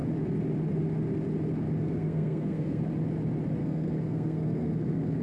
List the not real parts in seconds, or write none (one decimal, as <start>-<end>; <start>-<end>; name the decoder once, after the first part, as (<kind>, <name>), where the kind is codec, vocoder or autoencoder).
1.8-2.8 (codec, SNAC); 3.6-5.2